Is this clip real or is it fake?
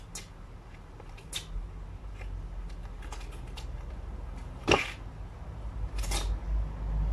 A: real